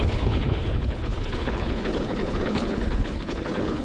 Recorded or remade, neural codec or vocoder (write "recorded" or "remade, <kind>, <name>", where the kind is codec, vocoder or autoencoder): remade, codec, HILCodec